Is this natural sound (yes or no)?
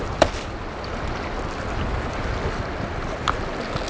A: yes